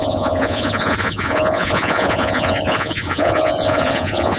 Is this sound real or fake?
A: fake